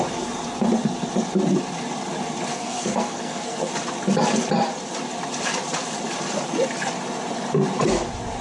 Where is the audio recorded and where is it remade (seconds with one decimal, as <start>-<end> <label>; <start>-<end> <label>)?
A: 0.0-2.5 recorded; 2.5-3.7 remade; 3.7-8.4 recorded